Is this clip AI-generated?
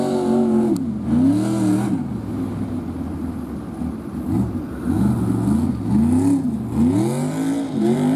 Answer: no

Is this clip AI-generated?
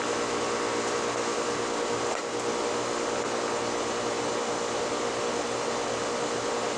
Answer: no